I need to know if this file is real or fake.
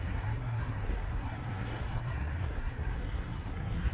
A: fake